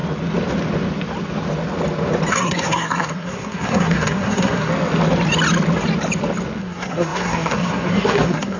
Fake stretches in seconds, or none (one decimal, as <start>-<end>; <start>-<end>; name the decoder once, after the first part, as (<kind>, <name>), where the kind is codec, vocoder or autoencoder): 2.3-4.7 (codec, SNAC); 6.6-8.6